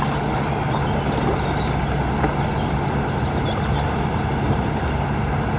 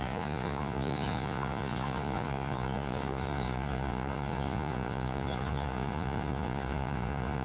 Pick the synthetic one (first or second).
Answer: second